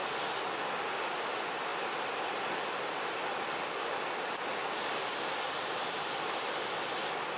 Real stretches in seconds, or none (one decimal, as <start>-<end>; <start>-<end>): 0.0-7.4